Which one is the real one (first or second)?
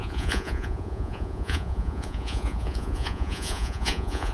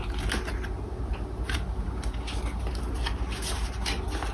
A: second